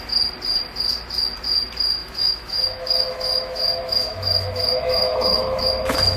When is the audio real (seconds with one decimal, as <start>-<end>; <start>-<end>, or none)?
0.0-2.0; 5.7-6.2